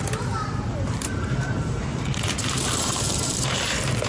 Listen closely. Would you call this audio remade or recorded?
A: remade